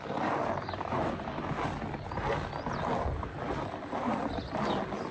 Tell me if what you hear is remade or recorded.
recorded